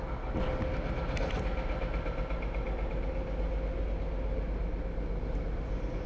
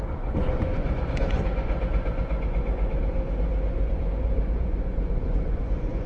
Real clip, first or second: first